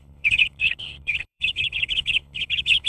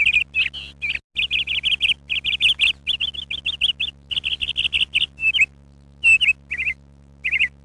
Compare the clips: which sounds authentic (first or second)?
second